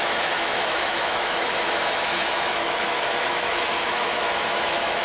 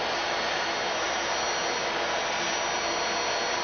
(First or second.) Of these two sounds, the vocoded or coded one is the first